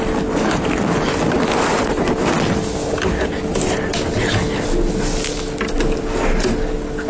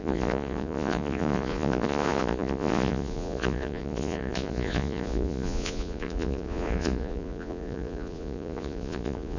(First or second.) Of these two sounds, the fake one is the second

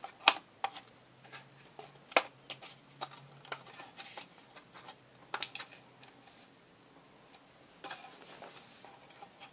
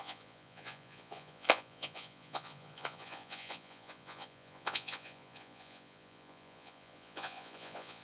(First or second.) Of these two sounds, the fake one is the second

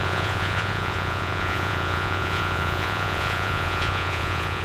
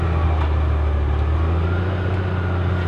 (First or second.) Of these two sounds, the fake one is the first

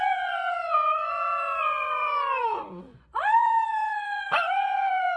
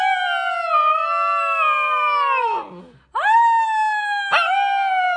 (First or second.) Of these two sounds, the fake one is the first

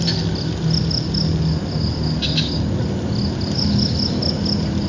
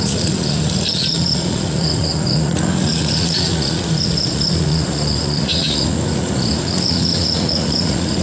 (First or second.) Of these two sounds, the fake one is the second